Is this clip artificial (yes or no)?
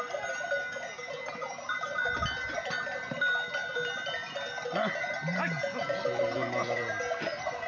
no